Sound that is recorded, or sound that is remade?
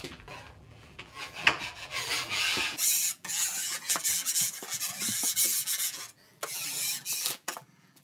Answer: remade